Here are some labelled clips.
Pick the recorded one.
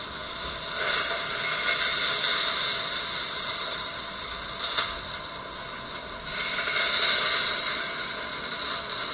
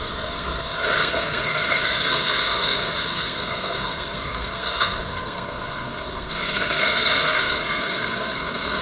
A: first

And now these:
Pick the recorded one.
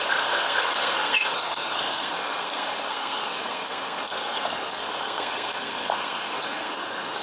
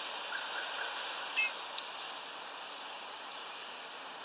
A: second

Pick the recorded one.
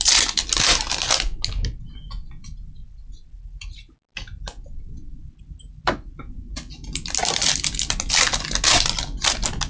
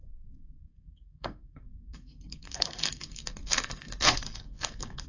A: first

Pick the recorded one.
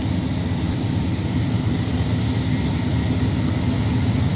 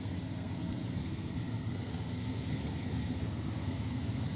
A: first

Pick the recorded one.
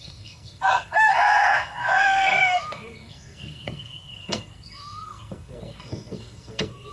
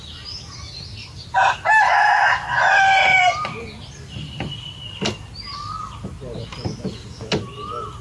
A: second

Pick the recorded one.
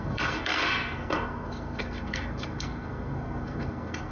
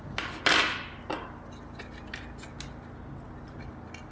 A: second